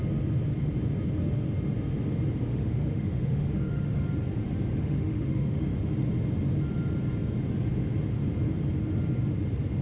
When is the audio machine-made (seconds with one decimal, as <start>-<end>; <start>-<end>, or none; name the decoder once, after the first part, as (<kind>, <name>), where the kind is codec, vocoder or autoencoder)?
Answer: 2.5-4.0 (autoencoder, DAC-VAE); 4.8-5.9